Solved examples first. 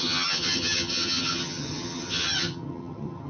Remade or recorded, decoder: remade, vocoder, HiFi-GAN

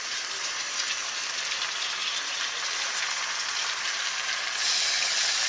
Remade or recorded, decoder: recorded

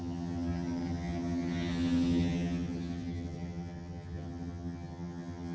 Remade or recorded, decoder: remade, vocoder, HiFi-GAN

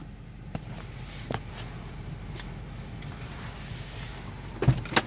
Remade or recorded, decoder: recorded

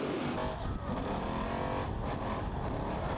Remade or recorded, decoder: recorded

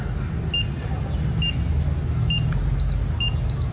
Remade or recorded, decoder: recorded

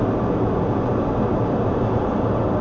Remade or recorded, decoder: recorded